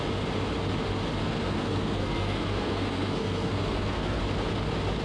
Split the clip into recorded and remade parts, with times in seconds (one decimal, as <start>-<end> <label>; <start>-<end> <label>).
0.0-1.2 recorded; 1.2-4.2 remade; 4.2-5.0 recorded